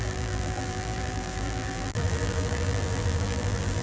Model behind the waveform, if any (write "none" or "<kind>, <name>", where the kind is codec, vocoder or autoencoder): vocoder, BigVGAN v2